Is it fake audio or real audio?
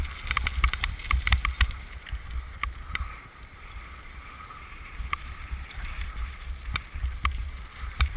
fake